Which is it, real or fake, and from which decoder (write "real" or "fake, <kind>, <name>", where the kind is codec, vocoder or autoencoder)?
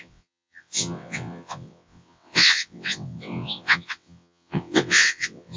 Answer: fake, vocoder, WaveNeXt